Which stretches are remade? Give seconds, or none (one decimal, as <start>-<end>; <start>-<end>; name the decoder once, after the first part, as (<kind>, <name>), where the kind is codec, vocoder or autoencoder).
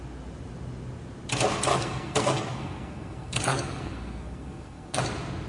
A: 1.7-5.0 (codec, SNAC)